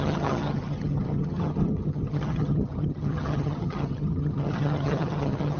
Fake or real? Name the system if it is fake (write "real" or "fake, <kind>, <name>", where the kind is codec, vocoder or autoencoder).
fake, vocoder, HiFi-GAN